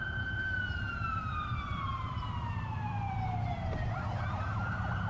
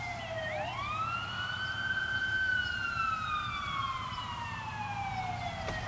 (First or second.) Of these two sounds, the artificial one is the first